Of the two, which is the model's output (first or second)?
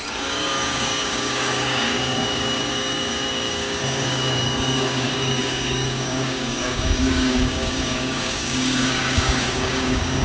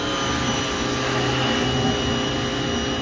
first